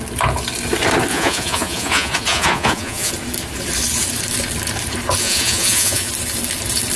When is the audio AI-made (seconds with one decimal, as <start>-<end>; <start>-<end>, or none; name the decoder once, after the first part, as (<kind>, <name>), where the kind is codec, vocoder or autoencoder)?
1.1-3.1 (vocoder, Vocos); 5.2-6.1